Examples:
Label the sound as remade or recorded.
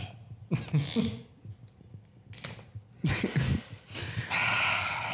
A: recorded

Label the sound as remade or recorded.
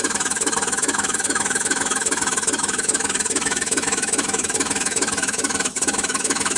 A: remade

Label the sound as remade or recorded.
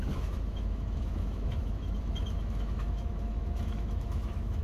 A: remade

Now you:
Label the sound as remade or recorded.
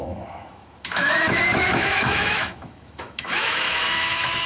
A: remade